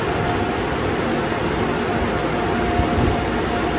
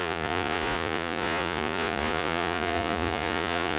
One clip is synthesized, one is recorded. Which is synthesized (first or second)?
second